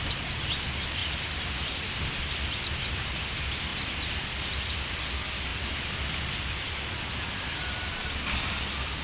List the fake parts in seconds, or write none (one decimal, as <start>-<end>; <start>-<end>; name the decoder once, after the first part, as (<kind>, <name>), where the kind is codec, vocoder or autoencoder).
1.0-2.2 (vocoder, BigVGAN v2); 3.7-5.0; 5.5-6.7